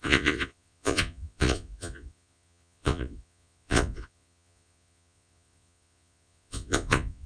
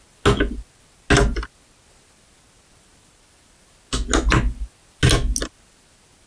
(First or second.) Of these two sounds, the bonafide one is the second